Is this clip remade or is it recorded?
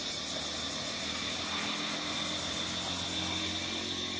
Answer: recorded